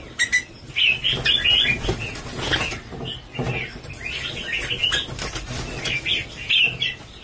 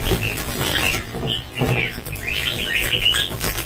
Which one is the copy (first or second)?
second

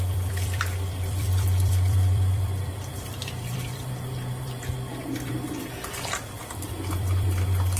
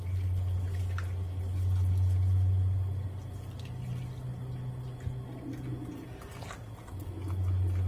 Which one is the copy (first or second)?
first